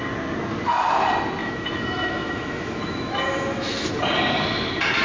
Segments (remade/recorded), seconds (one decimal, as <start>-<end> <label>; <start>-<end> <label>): 0.0-1.4 recorded; 1.4-3.9 remade; 3.9-5.0 recorded